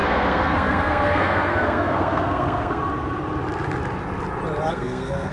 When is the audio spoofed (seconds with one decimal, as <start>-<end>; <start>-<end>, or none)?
0.0-2.8; 4.7-5.3